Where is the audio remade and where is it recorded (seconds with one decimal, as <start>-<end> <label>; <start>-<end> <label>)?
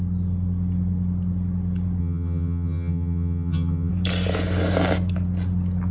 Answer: 0.0-2.0 recorded; 2.0-3.9 remade; 3.9-5.9 recorded